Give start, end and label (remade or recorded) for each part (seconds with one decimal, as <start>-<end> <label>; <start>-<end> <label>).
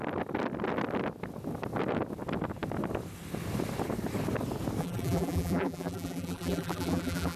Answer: 0.0-4.8 recorded; 4.8-7.4 remade